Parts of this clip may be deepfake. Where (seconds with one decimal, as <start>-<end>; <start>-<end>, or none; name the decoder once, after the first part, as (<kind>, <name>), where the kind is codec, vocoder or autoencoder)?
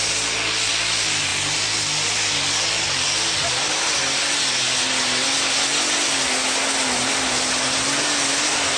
none